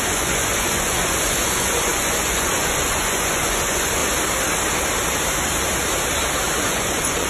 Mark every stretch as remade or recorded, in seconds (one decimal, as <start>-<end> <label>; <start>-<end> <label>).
0.0-4.0 remade; 4.0-6.6 recorded; 6.6-7.3 remade